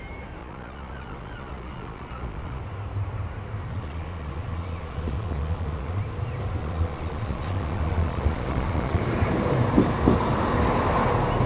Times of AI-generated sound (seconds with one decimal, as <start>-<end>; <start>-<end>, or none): 0.4-2.6; 3.7-6.0; 6.6-9.0